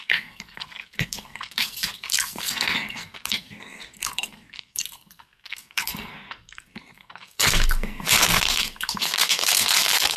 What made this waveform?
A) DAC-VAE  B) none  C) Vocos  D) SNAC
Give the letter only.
D